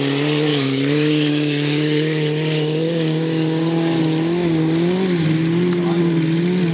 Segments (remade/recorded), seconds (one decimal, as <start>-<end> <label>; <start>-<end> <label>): 0.0-0.5 recorded; 0.5-4.0 remade; 4.0-6.7 recorded